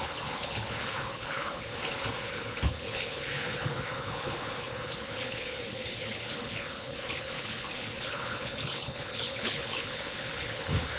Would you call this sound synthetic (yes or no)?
yes